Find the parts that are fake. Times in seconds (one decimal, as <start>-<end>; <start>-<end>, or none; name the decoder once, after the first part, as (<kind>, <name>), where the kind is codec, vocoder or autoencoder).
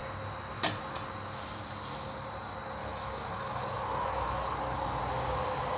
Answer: 2.8-5.0 (codec, DAC)